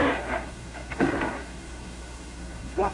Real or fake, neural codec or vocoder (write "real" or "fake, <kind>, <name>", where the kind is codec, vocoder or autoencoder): fake, codec, SNAC